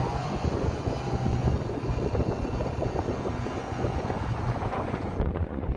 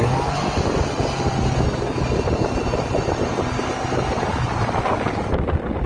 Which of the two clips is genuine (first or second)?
second